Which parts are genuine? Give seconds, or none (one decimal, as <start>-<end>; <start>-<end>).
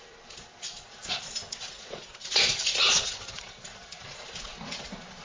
none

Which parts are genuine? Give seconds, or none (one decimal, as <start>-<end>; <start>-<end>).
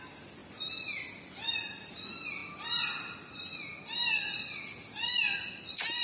0.0-6.0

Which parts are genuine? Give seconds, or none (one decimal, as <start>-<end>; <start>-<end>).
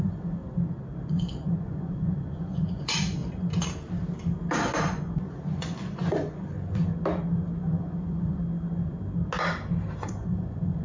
0.4-1.1; 3.2-4.8; 6.9-7.6; 8.4-10.0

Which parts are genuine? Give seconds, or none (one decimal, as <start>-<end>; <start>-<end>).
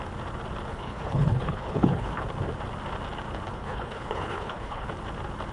0.0-0.7; 2.2-3.5; 4.9-5.5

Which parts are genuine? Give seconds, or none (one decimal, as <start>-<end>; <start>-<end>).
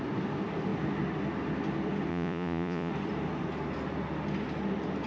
0.0-2.1; 2.9-5.1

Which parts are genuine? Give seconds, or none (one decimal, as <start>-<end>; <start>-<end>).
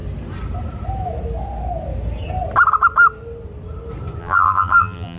0.0-4.2